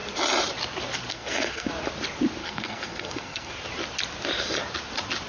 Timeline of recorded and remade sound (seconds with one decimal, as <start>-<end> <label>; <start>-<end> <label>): 0.0-1.1 recorded; 1.1-1.7 remade; 1.7-2.4 recorded; 2.4-3.5 remade; 3.5-5.3 recorded